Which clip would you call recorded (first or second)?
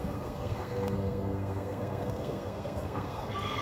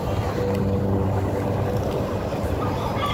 second